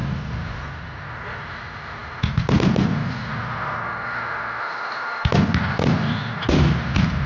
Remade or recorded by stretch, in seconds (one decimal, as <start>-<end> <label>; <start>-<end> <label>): 0.0-1.5 remade; 1.5-7.3 recorded

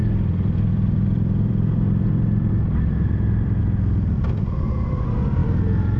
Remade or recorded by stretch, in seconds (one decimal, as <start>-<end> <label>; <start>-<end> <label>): 0.0-3.6 remade; 3.6-5.4 recorded; 5.4-6.0 remade

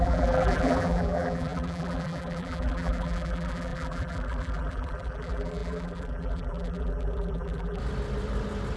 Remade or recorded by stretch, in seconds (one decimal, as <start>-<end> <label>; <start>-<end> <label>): 0.0-7.8 remade; 7.8-8.8 recorded

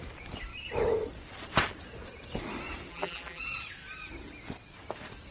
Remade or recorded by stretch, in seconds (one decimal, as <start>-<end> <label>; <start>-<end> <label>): 0.0-2.9 recorded; 2.9-3.4 remade; 3.4-5.3 recorded

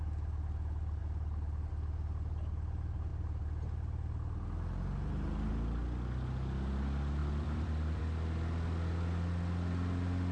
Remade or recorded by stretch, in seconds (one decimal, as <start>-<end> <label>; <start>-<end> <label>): 0.0-7.2 recorded; 7.2-8.0 remade; 8.0-10.3 recorded

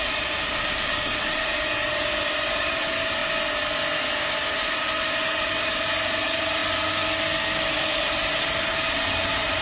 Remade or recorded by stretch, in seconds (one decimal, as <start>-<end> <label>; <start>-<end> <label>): 0.0-3.2 remade; 3.2-4.5 recorded; 4.5-6.6 remade; 6.6-7.6 recorded; 7.6-9.6 remade

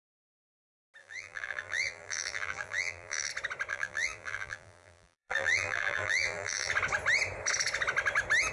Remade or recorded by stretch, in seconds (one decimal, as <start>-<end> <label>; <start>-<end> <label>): 0.0-1.0 recorded; 1.0-3.3 remade; 3.3-3.7 recorded; 3.7-6.7 remade; 6.7-8.5 recorded